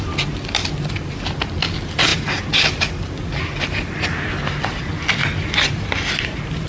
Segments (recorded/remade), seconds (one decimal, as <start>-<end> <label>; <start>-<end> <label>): 0.0-6.7 recorded